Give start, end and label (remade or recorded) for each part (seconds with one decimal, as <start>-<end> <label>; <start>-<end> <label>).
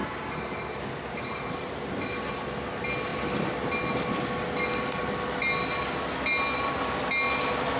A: 0.0-2.3 remade; 2.3-7.8 recorded